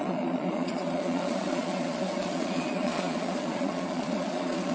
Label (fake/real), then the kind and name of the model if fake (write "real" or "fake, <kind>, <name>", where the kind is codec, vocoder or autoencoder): fake, vocoder, Vocos